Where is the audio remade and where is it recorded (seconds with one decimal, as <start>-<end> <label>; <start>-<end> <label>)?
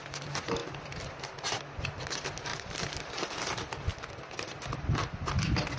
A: 0.0-2.5 recorded; 2.5-3.1 remade; 3.1-5.8 recorded